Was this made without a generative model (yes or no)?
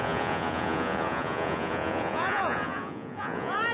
no